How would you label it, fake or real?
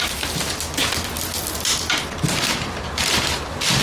real